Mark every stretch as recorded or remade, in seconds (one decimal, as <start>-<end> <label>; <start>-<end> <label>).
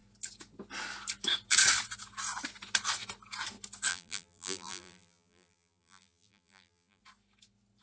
0.0-3.9 recorded; 3.9-7.0 remade; 7.0-7.8 recorded